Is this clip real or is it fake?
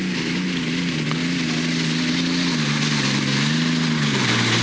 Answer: real